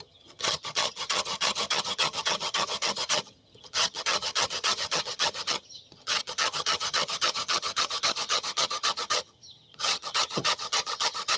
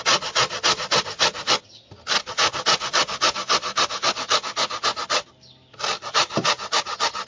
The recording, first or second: second